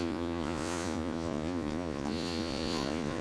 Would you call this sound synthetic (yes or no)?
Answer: yes